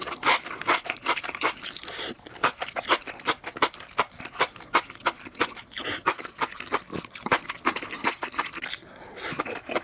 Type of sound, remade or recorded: recorded